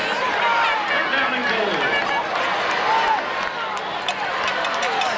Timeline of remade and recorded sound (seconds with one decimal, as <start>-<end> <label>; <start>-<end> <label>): 0.0-0.7 recorded; 0.7-1.4 remade; 1.4-4.5 recorded; 4.5-5.2 remade